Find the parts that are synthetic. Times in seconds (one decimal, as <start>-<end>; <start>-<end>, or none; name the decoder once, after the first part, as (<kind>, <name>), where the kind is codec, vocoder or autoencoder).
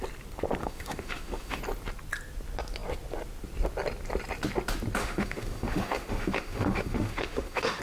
0.6-1.6 (autoencoder, DAC-VAE); 5.0-7.8